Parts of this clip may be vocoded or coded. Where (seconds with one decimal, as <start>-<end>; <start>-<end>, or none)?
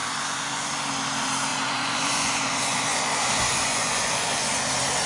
0.0-0.7; 1.5-4.6